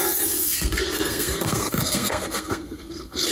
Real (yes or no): no